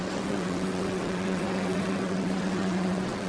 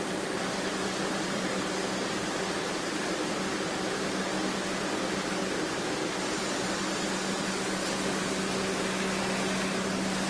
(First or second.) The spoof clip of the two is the first